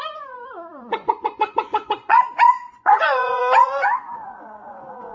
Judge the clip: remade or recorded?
remade